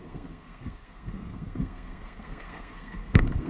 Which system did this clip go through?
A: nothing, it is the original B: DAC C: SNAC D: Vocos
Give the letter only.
C